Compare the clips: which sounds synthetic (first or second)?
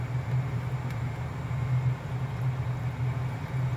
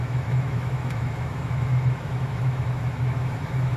second